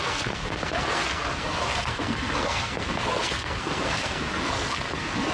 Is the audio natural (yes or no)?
no